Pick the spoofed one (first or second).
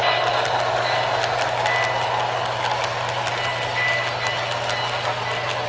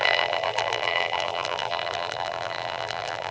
second